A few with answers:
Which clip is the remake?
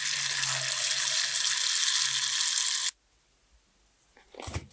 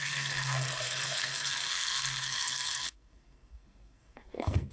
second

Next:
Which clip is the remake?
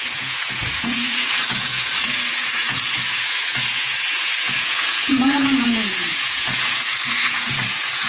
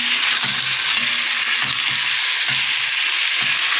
first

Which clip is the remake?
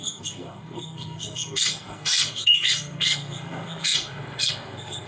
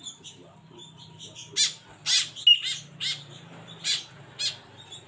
first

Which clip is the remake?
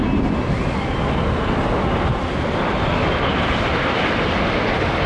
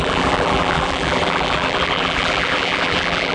second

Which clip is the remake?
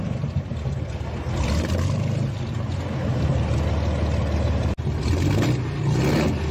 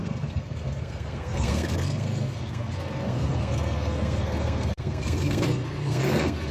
second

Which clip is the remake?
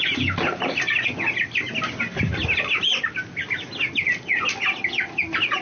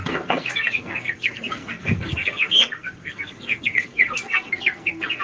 second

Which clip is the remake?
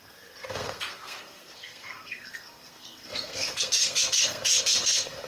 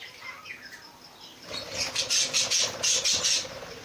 first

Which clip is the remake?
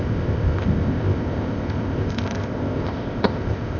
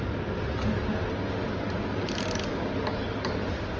first